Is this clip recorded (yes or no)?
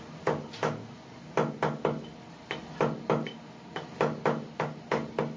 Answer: yes